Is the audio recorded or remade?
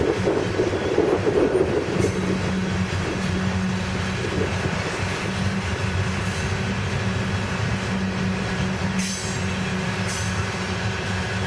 recorded